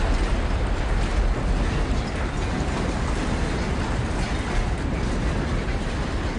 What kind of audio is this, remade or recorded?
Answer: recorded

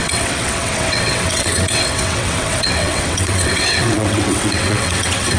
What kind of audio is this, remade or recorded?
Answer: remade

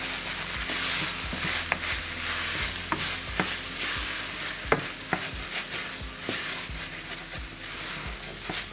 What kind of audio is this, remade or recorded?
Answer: recorded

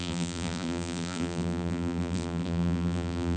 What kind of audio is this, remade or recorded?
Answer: remade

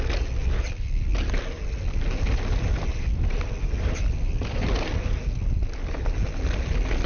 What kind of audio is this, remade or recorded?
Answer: recorded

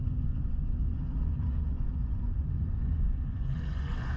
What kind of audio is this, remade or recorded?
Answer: remade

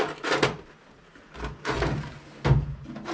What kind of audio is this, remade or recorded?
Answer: recorded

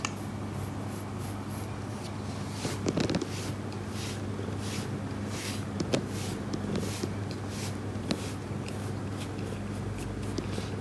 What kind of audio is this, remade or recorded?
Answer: recorded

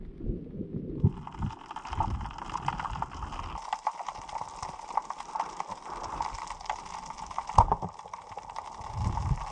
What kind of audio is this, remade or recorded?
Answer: recorded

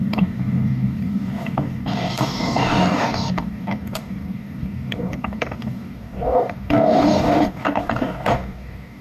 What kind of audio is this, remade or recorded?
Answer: remade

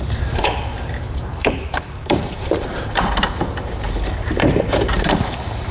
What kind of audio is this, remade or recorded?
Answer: remade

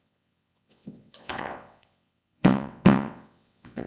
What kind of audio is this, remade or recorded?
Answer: remade